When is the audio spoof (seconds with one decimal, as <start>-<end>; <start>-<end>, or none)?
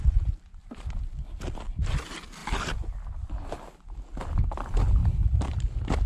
none